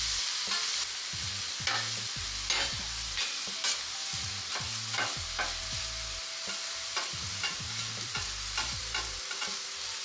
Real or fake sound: real